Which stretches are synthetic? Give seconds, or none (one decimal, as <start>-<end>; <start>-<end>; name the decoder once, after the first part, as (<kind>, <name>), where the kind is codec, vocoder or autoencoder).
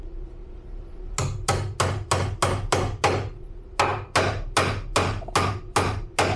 none